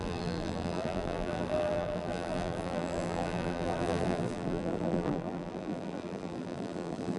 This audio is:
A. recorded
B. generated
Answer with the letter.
B